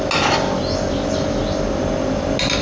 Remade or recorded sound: recorded